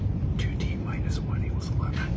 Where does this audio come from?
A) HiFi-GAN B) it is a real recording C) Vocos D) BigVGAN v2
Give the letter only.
B